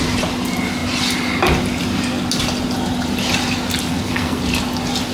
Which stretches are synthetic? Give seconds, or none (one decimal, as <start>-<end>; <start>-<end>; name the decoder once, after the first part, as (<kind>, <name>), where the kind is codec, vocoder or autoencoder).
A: 3.9-4.4 (codec, SNAC)